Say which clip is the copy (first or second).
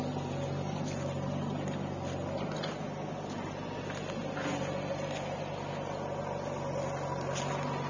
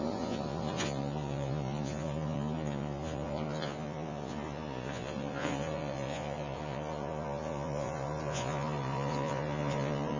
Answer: second